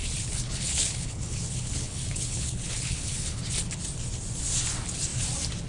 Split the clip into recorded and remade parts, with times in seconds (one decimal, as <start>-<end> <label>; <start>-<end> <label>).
0.0-3.4 remade; 3.4-5.7 recorded